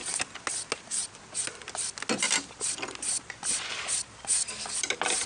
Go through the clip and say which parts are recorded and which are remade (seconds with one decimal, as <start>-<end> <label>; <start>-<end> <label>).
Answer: 0.0-5.3 recorded